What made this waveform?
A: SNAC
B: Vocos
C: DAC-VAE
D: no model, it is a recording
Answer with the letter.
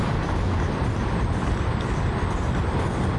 D